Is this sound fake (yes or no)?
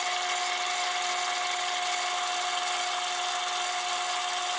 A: no